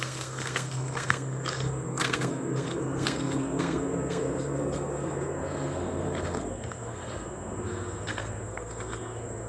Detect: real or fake fake